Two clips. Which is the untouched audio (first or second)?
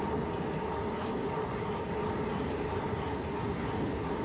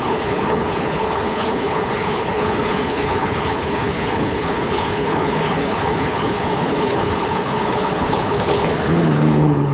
first